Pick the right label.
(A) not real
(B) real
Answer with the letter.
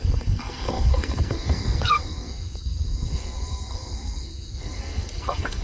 A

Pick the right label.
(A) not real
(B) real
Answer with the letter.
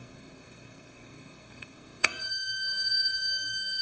A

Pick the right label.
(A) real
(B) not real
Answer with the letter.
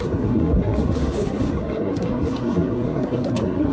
B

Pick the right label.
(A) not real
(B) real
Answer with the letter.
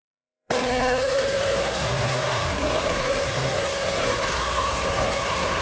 A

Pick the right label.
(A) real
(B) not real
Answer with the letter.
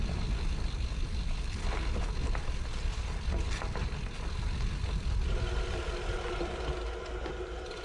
A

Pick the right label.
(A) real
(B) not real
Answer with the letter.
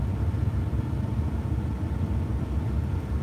A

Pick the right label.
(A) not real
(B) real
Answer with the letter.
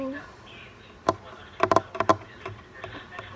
B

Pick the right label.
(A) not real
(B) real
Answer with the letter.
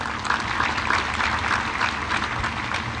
B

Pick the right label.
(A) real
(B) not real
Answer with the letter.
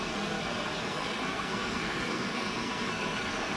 B